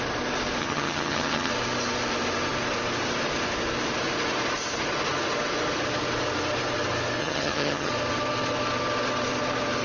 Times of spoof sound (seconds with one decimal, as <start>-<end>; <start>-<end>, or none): 0.6-1.5; 7.2-7.9